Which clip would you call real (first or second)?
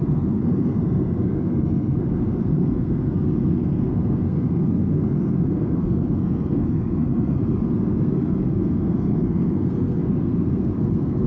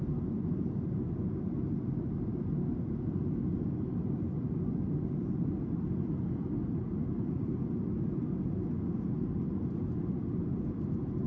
second